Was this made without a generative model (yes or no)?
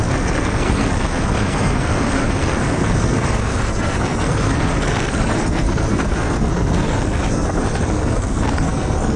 no